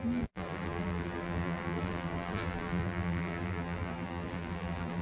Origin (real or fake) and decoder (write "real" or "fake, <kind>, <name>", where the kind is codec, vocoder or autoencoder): fake, vocoder, BigVGAN v2